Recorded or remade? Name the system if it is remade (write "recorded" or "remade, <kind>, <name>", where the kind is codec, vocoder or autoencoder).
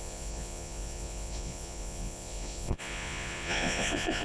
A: remade, vocoder, Vocos